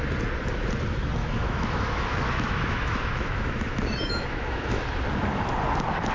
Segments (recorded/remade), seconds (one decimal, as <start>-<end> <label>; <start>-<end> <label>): 0.0-1.2 recorded; 1.2-4.9 remade; 4.9-6.1 recorded